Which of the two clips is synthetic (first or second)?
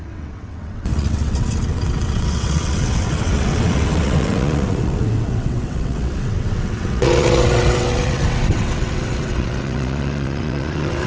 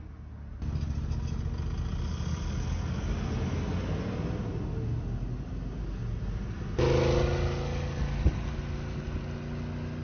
first